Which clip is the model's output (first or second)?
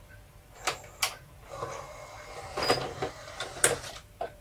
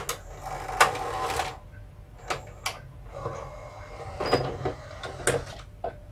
first